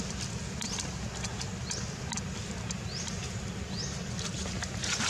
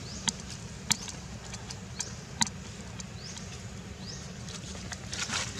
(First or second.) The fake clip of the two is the second